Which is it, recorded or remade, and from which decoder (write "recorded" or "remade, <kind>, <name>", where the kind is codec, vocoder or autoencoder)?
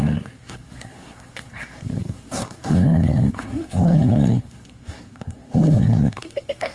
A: remade, codec, SNAC